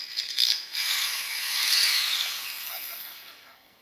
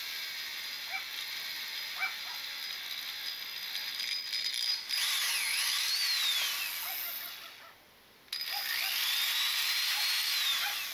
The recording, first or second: second